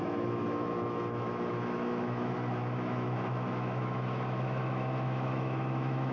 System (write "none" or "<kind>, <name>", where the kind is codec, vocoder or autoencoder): autoencoder, DAC-VAE